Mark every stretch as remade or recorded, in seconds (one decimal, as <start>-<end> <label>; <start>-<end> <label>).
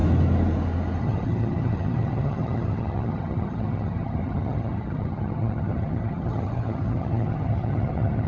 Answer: 0.0-1.0 recorded; 1.0-8.3 remade